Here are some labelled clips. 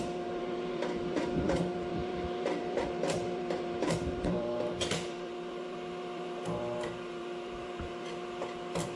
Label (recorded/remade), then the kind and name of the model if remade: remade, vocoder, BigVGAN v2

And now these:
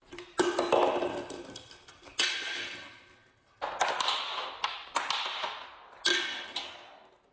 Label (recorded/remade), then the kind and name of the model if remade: recorded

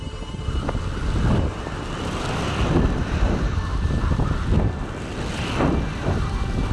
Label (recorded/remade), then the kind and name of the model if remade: recorded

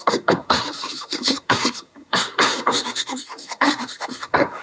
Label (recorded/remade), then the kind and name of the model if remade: remade, codec, SNAC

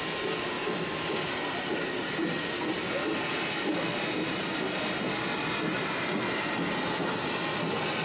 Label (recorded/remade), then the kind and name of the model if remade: recorded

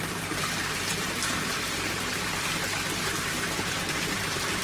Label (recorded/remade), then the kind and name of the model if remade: remade, vocoder, BigVGAN v2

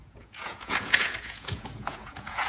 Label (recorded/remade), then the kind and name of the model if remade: remade, vocoder, Vocos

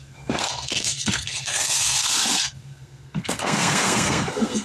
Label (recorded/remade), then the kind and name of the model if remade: remade, codec, SNAC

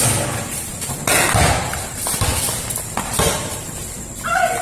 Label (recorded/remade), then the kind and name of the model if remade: remade, vocoder, BigVGAN v2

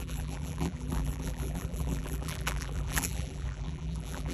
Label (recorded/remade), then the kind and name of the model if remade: remade, vocoder, BigVGAN v2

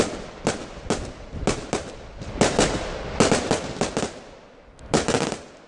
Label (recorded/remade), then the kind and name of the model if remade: recorded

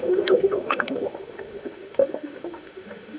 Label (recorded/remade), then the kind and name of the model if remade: remade, autoencoder, DAC-VAE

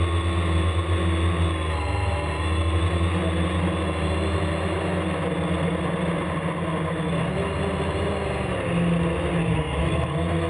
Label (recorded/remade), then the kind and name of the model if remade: recorded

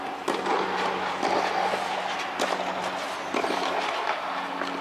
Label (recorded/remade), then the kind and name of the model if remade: recorded